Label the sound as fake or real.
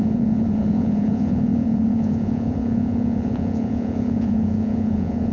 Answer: fake